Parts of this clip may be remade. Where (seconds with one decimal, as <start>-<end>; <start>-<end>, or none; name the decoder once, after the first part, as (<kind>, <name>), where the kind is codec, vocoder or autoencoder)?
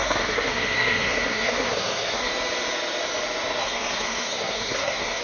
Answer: 0.0-2.3 (codec, SNAC); 3.6-5.2